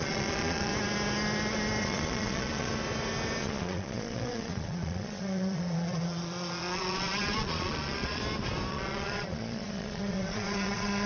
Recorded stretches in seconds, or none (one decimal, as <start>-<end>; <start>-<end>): 0.7-1.8; 2.7-3.4; 8.2-8.7